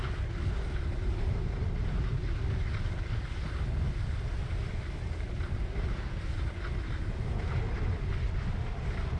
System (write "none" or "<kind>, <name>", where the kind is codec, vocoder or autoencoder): none